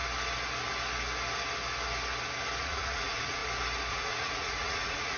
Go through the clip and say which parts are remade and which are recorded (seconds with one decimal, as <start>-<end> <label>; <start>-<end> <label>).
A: 0.0-2.6 recorded; 2.6-3.4 remade; 3.4-3.9 recorded; 3.9-5.2 remade